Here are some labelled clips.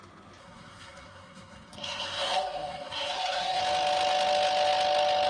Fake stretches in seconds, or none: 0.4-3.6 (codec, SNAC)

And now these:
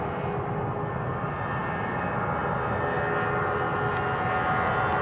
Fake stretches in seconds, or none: none

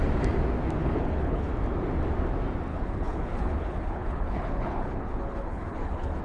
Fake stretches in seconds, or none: 0.8-1.5 (codec, HILCodec); 2.7-6.2

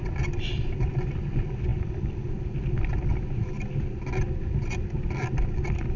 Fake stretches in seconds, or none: none